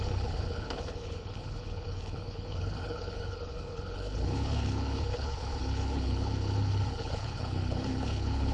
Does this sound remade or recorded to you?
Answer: remade